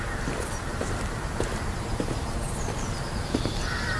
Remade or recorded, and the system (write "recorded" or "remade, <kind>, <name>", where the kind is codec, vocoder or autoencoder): remade, vocoder, BigVGAN v2